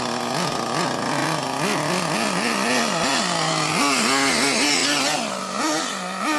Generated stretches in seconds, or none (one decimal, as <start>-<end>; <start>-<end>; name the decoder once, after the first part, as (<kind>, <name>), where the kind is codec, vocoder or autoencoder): none